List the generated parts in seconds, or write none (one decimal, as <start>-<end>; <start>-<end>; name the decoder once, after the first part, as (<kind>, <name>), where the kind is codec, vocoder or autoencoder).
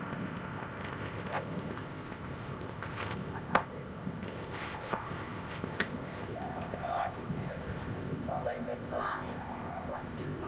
0.0-10.5 (codec, ZipCodec)